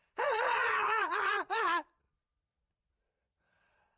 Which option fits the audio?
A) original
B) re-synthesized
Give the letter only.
B